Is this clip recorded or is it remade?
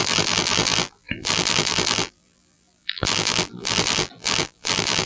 remade